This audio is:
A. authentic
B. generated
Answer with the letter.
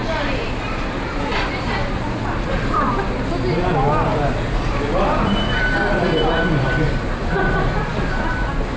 A